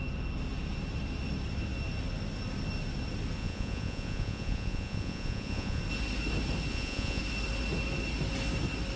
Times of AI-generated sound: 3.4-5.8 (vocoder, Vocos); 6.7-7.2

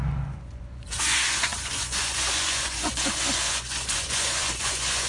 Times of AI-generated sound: 0.0-5.1 (vocoder, Vocos)

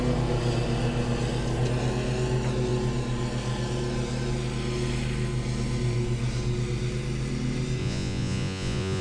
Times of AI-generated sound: 7.8-9.0 (vocoder, Vocos)

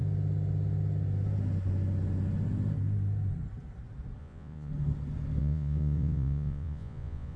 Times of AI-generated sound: 4.2-4.7 (vocoder, Vocos); 5.4-7.4